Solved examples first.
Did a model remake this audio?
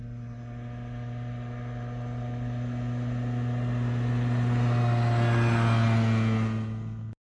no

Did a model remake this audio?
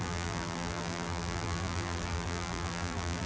yes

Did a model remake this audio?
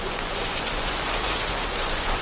yes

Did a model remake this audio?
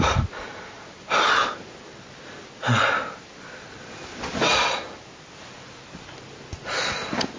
yes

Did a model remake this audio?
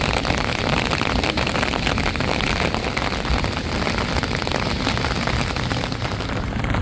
no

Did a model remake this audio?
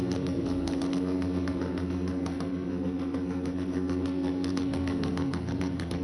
yes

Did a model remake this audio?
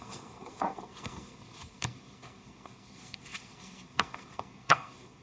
yes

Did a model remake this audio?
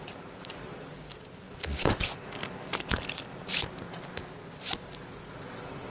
no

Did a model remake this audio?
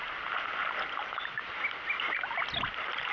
no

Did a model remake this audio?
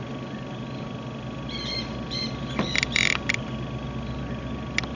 no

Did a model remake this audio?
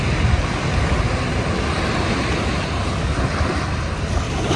no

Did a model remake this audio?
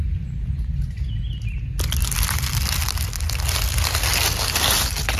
no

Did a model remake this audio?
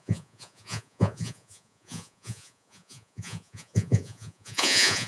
yes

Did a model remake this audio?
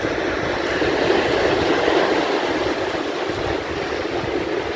no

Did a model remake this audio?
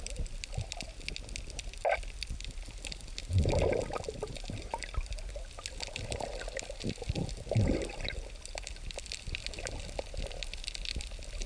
no